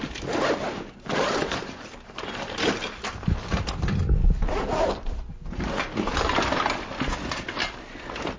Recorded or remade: recorded